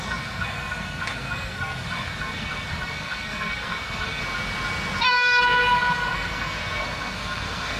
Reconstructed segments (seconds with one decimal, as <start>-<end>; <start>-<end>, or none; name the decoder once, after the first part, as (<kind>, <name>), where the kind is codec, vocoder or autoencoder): 0.0-4.2 (codec, SNAC); 5.1-7.8